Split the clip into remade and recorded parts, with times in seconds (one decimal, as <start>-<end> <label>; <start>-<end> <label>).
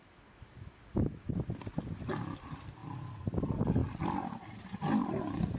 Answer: 0.0-1.3 remade; 1.3-5.6 recorded